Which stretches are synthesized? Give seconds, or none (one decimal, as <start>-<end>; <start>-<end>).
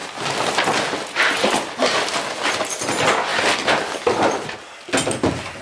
3.3-4.0